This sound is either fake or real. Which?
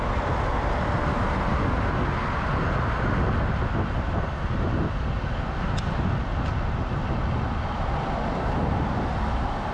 real